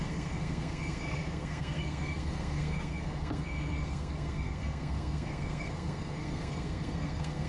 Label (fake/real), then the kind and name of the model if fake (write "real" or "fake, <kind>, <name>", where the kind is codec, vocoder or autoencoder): fake, codec, SNAC